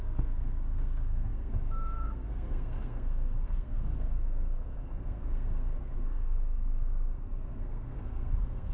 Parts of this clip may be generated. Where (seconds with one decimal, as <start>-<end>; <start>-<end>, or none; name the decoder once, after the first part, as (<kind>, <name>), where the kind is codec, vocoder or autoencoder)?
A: 0.0-8.7 (codec, SNAC)